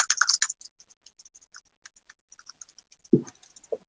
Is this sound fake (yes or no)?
no